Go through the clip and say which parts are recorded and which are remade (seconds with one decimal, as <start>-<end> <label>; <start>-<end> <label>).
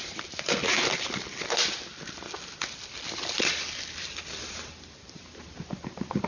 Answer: 0.0-0.6 remade; 0.6-4.4 recorded; 4.4-6.3 remade